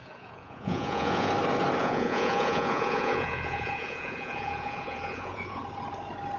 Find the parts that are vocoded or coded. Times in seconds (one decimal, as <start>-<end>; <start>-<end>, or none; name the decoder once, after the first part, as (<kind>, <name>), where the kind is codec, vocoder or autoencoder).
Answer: 0.0-1.3 (vocoder, Vocos); 1.8-5.6